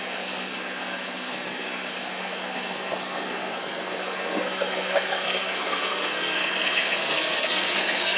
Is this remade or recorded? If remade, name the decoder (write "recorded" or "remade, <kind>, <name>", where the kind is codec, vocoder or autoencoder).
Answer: remade, codec, SNAC